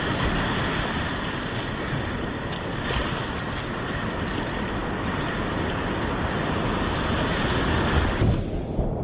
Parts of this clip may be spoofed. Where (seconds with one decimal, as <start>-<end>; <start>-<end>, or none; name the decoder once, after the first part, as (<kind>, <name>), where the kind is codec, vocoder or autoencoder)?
none